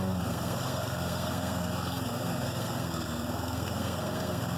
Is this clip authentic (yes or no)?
no